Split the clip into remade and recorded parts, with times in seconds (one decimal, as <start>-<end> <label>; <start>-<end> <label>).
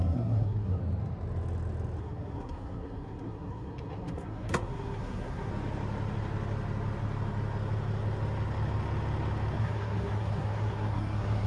0.0-0.8 remade; 0.8-2.0 recorded; 2.0-5.5 remade; 5.5-9.6 recorded; 9.6-11.5 remade